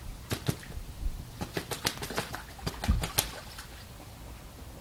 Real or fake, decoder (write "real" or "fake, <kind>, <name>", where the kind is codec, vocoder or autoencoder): real